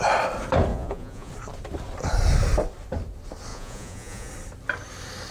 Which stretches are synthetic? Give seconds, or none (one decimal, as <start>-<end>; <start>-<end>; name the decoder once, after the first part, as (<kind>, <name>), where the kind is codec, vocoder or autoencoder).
0.7-1.3 (vocoder, Vocos); 3.5-4.3